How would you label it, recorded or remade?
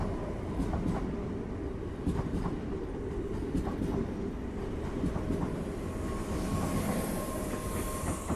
recorded